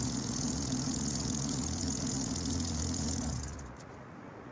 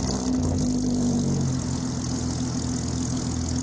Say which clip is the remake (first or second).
first